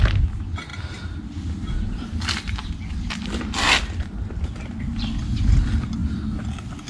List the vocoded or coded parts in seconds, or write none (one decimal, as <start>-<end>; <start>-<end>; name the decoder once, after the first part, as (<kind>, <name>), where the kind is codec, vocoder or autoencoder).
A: none